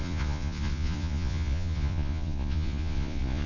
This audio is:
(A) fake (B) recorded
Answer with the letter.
A